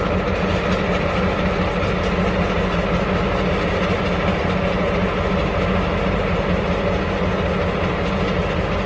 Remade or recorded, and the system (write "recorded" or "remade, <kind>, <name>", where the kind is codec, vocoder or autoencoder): recorded